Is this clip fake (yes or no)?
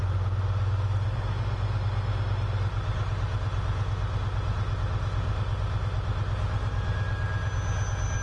no